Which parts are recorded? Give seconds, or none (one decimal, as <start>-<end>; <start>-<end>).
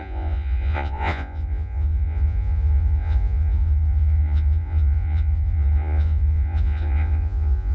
none